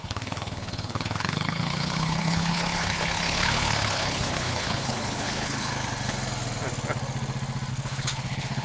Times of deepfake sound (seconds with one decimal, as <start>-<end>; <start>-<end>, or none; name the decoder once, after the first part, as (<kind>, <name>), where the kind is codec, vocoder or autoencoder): 0.0-5.7 (codec, HILCodec); 7.7-8.6